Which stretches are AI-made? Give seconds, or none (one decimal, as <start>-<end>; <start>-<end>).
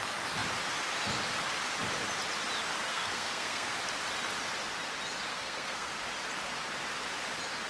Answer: 2.9-3.7; 5.3-5.9